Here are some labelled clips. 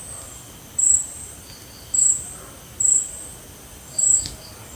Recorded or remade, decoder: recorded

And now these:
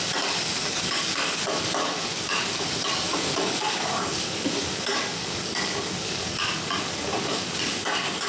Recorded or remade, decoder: remade, codec, DAC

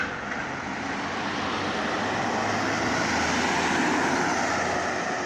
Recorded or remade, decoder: recorded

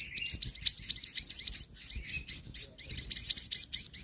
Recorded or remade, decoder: recorded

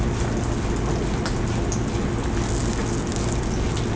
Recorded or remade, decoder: recorded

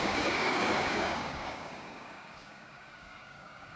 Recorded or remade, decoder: remade, codec, DAC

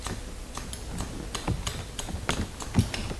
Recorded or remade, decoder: recorded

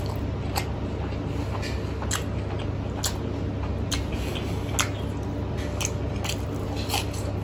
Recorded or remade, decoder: recorded